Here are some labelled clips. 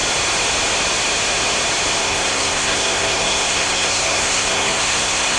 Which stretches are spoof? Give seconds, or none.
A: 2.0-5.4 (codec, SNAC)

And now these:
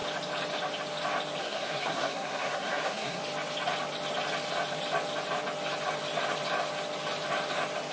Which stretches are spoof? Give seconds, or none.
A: 1.4-3.2 (codec, SNAC)

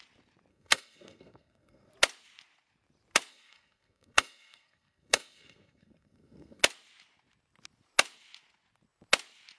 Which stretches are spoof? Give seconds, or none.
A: 0.5-1.9 (codec, SNAC); 3.3-6.6

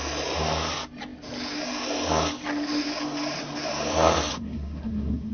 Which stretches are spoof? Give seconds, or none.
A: 4.3-5.3 (codec, SNAC)

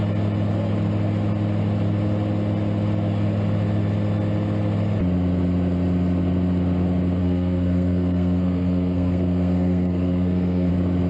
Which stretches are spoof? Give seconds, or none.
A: 7.2-10.7 (codec, SNAC)

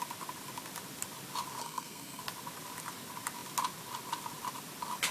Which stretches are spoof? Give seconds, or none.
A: 1.6-2.2 (codec, SNAC)

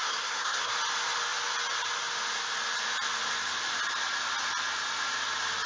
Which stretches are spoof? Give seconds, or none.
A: 0.0-0.7 (codec, SNAC)